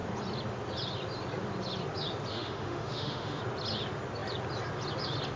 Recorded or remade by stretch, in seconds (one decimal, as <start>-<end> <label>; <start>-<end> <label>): 0.0-2.3 recorded; 2.3-3.4 remade; 3.4-5.4 recorded